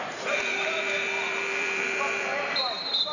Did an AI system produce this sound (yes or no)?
yes